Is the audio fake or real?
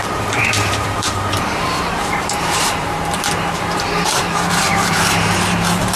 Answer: fake